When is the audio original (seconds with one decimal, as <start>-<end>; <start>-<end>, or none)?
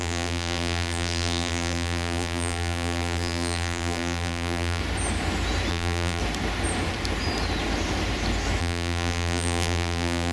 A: 4.8-5.7; 6.2-8.6